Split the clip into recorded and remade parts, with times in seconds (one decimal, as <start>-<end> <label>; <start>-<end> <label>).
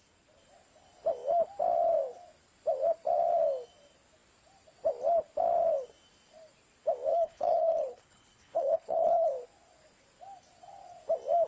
0.0-7.1 recorded; 7.1-9.3 remade; 9.3-11.5 recorded